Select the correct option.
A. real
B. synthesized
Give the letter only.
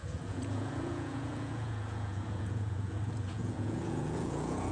B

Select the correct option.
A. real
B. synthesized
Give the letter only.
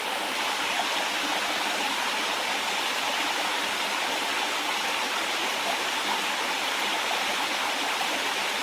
A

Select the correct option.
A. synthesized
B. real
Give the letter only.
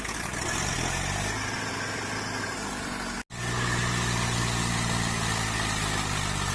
B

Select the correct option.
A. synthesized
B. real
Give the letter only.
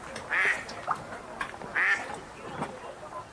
B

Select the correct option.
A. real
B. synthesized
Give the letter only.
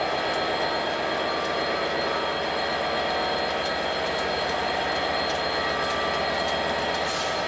A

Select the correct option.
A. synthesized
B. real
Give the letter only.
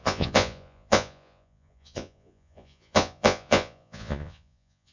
A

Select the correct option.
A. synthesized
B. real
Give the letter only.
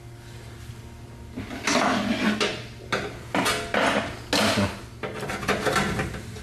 B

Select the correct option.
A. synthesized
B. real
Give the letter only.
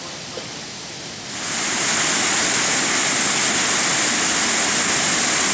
B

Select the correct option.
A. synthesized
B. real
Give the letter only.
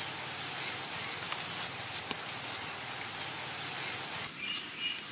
B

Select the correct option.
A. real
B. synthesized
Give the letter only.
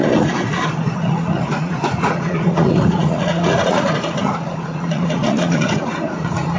B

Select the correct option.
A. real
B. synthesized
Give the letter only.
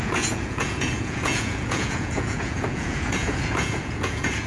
B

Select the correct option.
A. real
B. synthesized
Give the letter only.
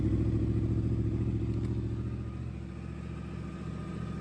A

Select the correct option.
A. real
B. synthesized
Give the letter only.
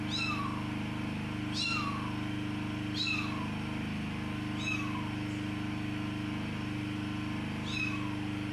A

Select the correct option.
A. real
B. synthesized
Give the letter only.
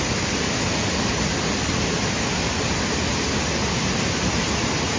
A